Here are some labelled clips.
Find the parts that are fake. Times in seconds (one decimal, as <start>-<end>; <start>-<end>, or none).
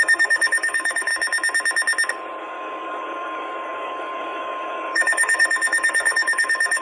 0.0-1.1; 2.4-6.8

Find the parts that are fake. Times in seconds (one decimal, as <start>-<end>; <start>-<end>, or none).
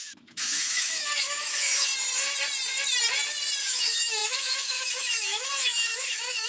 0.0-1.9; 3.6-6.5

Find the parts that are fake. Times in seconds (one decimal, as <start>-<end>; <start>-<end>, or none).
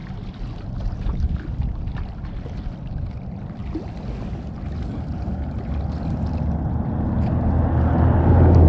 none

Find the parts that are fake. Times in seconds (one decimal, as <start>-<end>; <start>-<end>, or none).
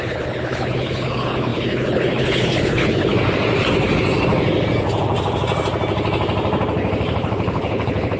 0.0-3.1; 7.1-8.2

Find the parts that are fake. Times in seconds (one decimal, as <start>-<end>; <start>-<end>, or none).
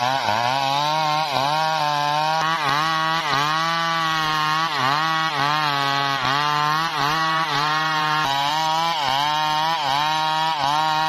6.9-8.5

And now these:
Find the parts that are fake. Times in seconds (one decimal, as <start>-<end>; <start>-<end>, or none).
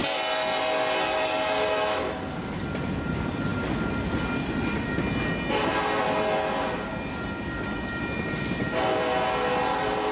none